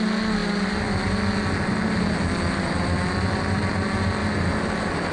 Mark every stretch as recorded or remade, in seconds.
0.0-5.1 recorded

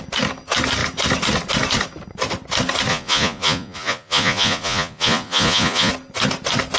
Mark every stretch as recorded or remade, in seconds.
0.0-2.9 recorded; 2.9-5.9 remade; 5.9-6.8 recorded

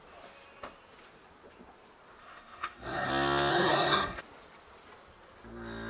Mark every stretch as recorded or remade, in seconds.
0.0-2.2 recorded; 2.2-3.1 remade; 3.1-3.5 recorded; 3.5-4.2 remade; 4.2-5.9 recorded